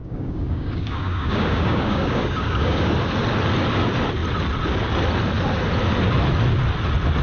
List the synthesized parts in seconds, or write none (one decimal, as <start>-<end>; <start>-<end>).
0.0-2.9